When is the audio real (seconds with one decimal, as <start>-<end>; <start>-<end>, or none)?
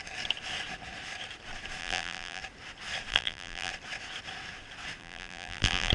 0.0-1.8; 2.4-3.1; 3.7-5.0